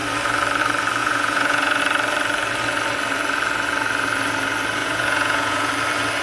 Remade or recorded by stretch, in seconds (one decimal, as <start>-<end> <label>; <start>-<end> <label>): 0.0-1.0 recorded; 1.0-1.8 remade; 1.8-4.8 recorded; 4.8-5.7 remade; 5.7-6.2 recorded